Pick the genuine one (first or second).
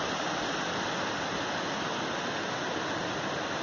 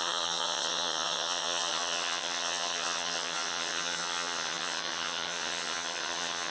first